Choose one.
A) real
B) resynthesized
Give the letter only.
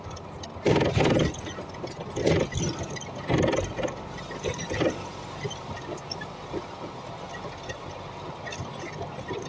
A